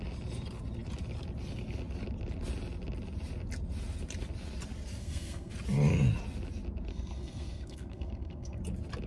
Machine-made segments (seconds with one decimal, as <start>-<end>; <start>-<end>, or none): 5.0-5.5; 6.9-8.6